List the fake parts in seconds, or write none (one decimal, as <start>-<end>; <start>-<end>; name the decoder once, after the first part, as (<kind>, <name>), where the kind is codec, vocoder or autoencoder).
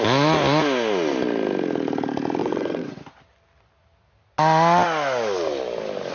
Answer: 2.4-3.0 (vocoder, WaveNeXt)